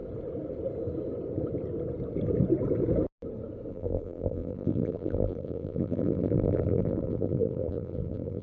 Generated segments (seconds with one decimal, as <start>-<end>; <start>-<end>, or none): 3.7-8.4